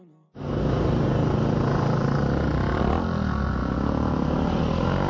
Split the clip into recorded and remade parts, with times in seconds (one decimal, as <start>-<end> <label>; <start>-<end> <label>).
0.0-5.1 recorded